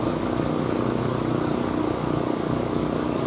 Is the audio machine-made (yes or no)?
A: yes